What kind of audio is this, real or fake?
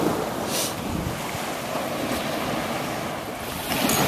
real